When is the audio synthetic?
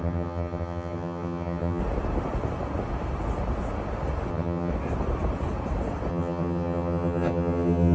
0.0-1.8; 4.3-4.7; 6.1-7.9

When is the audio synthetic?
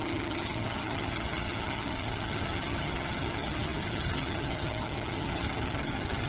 0.0-6.3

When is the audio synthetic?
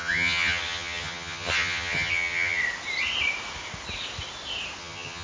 0.0-2.6; 4.8-5.2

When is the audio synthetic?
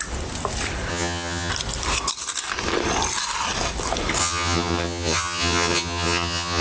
0.9-1.5; 4.2-6.6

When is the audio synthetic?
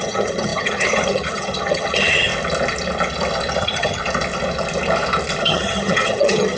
0.0-2.3; 3.6-4.0; 5.4-6.6